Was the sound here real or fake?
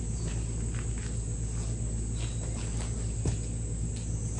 real